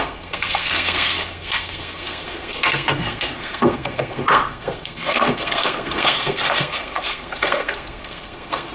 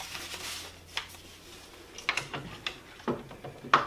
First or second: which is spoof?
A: first